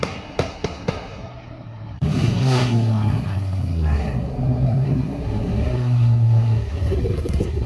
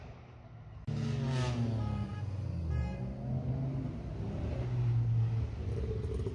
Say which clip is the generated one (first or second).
first